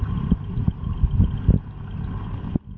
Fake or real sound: real